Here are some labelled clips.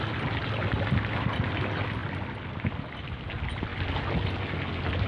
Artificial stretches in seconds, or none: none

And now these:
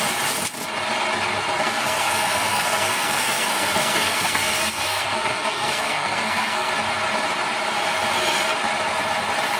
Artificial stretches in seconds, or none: 1.6-6.7 (codec, SNAC)

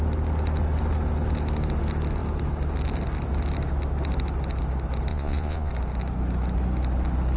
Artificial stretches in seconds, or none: 5.1-5.7 (vocoder, Vocos)

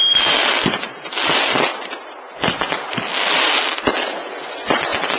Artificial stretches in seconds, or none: none